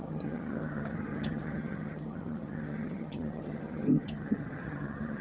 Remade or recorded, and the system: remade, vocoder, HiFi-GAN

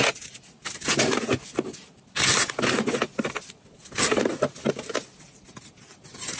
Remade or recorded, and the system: recorded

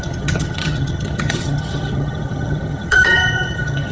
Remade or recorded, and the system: remade, vocoder, HiFi-GAN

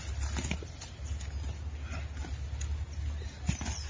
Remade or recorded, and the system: recorded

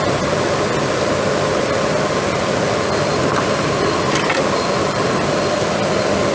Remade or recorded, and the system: recorded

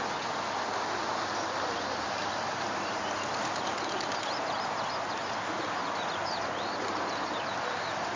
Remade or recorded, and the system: recorded